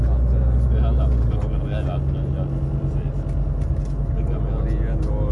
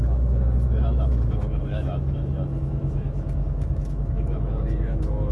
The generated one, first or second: second